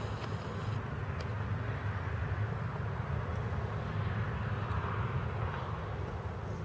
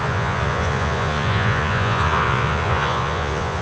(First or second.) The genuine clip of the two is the first